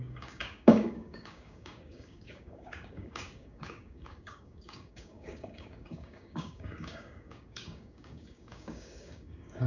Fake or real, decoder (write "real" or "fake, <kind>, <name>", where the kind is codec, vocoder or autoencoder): fake, codec, DAC